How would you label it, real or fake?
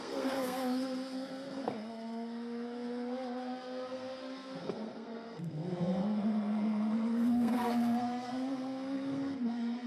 fake